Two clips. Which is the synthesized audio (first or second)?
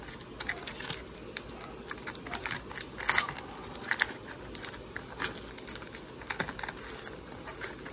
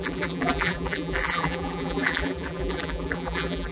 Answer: second